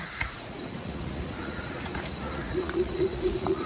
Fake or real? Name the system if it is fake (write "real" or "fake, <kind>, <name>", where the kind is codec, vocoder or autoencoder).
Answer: fake, vocoder, Vocos